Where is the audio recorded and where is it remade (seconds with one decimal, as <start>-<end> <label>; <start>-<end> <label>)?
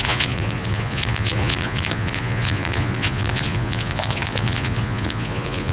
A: 0.0-5.7 remade